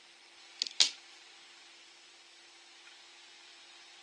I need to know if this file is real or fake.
real